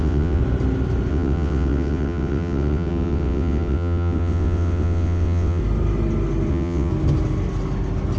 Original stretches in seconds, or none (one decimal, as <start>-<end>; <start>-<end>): 0.4-1.1; 5.6-6.5; 6.9-8.2